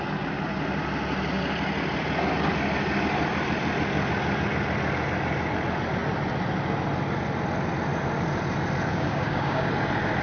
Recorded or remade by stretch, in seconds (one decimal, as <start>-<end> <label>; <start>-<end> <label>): 0.0-8.9 recorded; 8.9-9.7 remade; 9.7-10.2 recorded